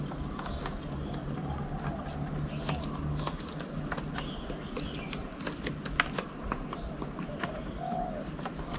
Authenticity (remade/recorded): recorded